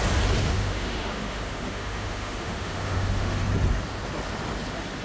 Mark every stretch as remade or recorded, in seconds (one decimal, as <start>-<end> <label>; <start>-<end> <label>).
0.0-0.4 recorded; 0.4-3.4 remade; 3.4-5.0 recorded